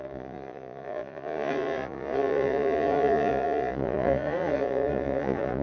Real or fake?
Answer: fake